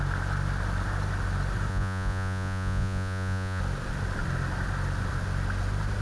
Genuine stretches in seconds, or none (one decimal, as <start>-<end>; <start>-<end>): 0.0-1.7; 3.6-6.0